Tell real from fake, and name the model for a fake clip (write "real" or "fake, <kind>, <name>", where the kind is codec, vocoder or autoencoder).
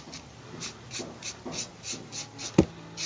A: real